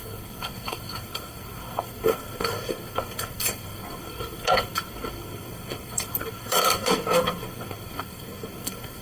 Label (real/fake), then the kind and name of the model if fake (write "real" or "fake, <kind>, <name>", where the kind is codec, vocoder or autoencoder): fake, codec, SNAC